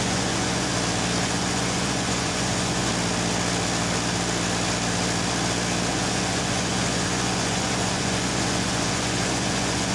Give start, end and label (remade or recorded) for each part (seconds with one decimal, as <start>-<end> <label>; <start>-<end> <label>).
0.0-0.7 remade; 0.7-1.2 recorded; 1.2-2.9 remade; 2.9-5.9 recorded; 5.9-9.9 remade